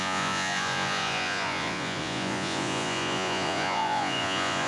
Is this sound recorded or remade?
remade